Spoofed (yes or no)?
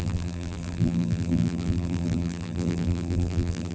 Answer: yes